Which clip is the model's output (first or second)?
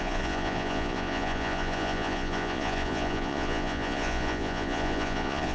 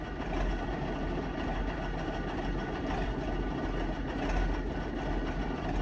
first